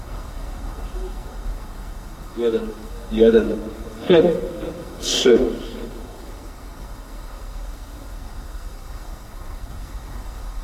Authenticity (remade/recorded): remade